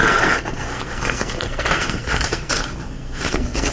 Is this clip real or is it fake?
fake